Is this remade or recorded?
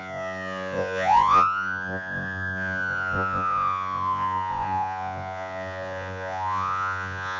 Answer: remade